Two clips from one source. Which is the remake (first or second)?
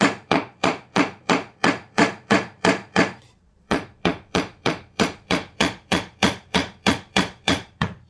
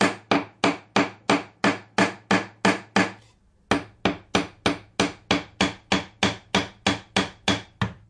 first